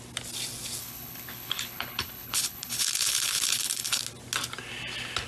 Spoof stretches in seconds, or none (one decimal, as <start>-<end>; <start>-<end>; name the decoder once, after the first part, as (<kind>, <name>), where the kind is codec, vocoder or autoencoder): 0.8-4.0 (codec, HILCodec)